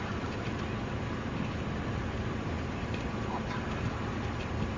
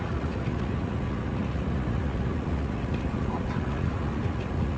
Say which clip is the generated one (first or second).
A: second